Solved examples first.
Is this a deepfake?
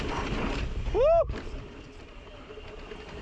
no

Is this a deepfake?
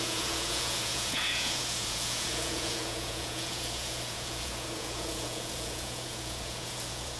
yes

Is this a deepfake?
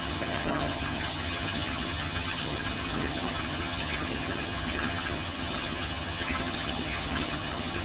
yes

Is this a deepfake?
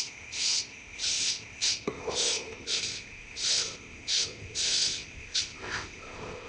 yes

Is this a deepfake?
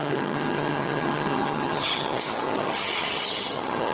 yes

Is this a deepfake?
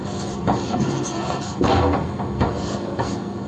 yes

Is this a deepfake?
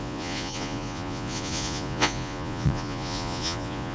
yes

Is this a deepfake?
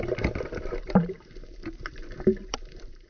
yes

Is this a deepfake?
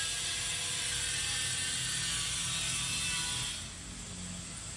no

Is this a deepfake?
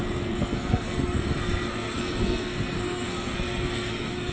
yes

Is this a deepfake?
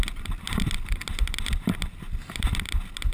no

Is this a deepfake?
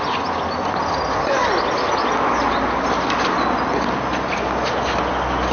no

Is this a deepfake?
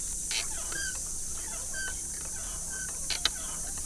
no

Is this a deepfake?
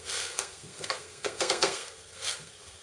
yes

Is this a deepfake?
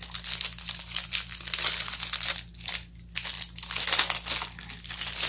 no